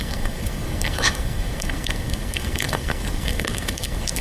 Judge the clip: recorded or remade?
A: remade